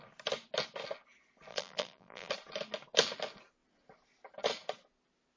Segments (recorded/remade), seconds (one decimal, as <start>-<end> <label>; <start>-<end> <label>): 0.0-1.5 recorded; 1.5-2.3 remade; 2.3-5.4 recorded